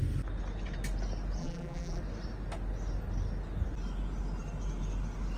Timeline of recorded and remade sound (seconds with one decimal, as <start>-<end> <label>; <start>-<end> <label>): 0.0-1.4 recorded; 1.4-2.0 remade; 2.0-5.4 recorded